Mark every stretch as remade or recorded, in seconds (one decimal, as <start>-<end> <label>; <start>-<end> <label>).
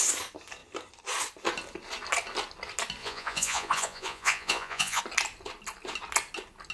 0.0-3.0 recorded; 3.0-5.0 remade; 5.0-6.7 recorded